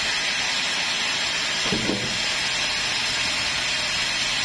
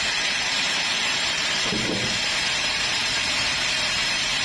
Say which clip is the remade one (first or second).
second